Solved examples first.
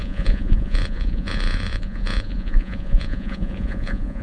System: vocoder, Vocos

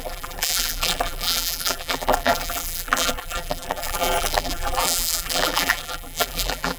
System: vocoder, BigVGAN v2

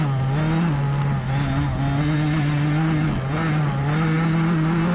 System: none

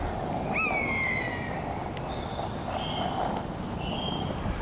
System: none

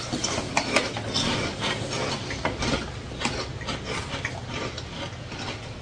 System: none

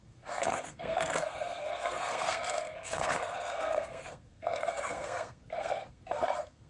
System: codec, SNAC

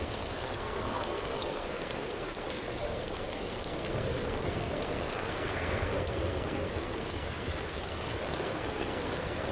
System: codec, SNAC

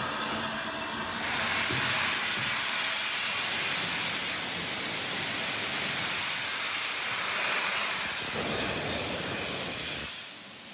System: none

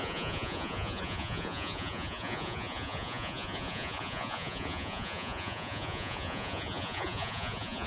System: vocoder, Vocos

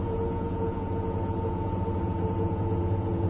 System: vocoder, Vocos